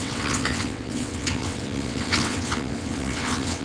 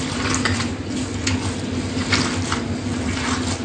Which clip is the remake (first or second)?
first